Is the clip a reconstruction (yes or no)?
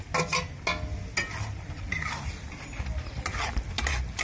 no